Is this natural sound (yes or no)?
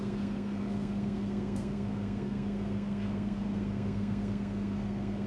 no